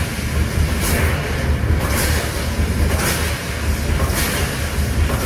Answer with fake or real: real